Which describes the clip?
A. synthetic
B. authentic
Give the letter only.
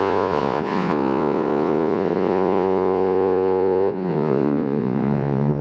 A